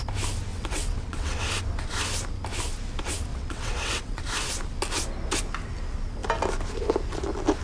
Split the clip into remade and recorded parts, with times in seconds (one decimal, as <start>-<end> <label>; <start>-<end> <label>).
0.0-0.5 recorded; 0.5-1.4 remade; 1.4-3.3 recorded; 3.3-4.2 remade; 4.2-7.6 recorded

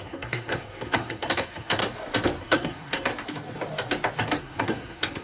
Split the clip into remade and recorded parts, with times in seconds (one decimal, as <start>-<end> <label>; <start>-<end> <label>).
0.0-1.8 remade; 1.8-2.4 recorded; 2.4-3.1 remade; 3.1-4.4 recorded; 4.4-5.2 remade

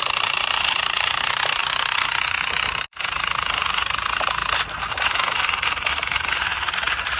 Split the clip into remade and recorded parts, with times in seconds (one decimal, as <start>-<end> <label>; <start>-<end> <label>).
0.0-1.6 remade; 1.6-2.9 recorded; 2.9-7.2 remade

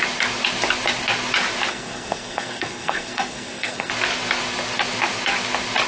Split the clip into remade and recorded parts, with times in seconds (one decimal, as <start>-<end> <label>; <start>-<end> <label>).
0.0-1.7 recorded; 1.7-3.9 remade; 3.9-5.9 recorded